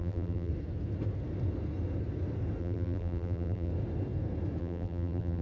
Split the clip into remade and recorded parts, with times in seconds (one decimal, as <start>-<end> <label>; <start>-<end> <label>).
0.0-0.5 remade; 0.5-2.6 recorded; 2.6-3.7 remade; 3.7-4.6 recorded; 4.6-5.4 remade